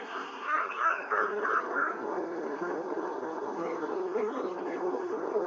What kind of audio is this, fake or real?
fake